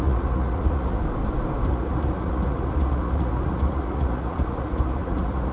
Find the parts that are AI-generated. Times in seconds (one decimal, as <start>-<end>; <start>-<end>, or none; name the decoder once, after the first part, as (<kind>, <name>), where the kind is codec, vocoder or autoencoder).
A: 0.0-1.0 (vocoder, Vocos); 1.7-5.5